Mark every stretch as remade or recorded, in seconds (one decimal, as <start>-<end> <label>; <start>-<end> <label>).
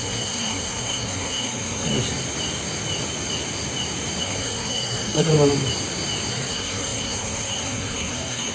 0.0-1.9 remade; 1.9-4.2 recorded; 4.2-5.3 remade; 5.3-6.3 recorded; 6.3-8.5 remade